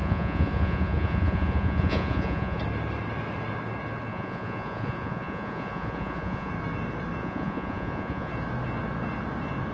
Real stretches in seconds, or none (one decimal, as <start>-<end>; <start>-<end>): 2.6-4.1; 6.5-7.2; 8.3-9.7

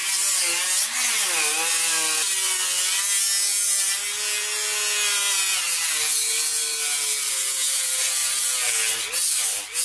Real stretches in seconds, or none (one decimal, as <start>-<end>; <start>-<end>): 0.0-9.8

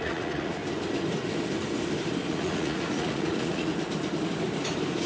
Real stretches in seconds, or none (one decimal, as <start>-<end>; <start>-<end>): 0.6-2.3; 3.7-5.1

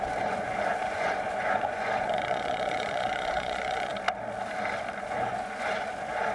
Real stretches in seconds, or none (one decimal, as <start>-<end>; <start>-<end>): 3.9-5.0

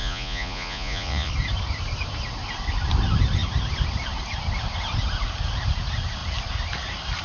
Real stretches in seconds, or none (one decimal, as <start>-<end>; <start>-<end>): 1.3-7.2

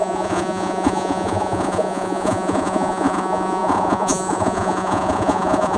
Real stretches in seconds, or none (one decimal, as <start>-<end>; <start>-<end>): none

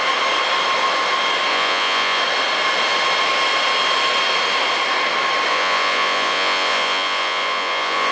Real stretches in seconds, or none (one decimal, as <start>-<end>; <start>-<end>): 0.0-1.5; 2.2-5.5

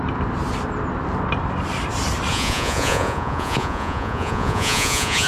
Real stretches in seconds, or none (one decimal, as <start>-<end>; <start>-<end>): 0.0-2.3